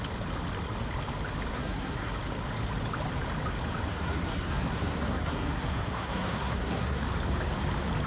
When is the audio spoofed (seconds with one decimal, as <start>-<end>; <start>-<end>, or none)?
1.5-2.1; 3.9-7.0